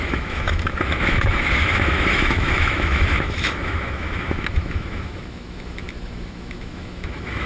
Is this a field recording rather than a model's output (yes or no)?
no